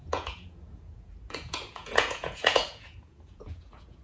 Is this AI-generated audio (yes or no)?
yes